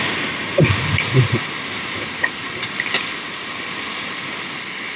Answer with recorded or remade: recorded